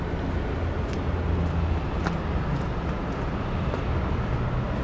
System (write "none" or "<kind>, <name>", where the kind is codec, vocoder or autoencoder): none